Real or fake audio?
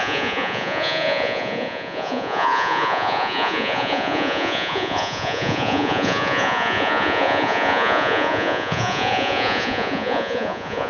fake